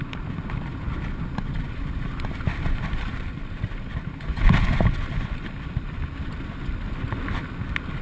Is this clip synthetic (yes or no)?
no